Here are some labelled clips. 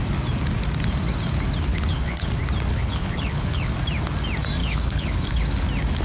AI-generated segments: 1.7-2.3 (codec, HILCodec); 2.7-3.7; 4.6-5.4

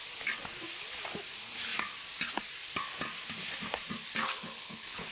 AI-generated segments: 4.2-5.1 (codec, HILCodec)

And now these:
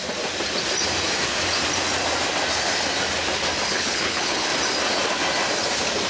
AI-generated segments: 3.7-4.5 (codec, HILCodec)

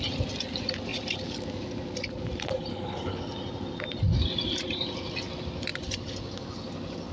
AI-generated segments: 2.7-3.2 (codec, HILCodec)